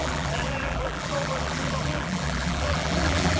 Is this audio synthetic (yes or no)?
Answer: yes